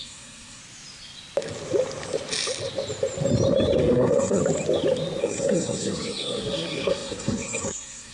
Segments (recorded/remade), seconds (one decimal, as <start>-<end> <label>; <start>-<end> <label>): 0.0-0.6 remade; 0.6-3.8 recorded; 3.8-4.4 remade; 4.4-5.2 recorded; 5.2-8.1 remade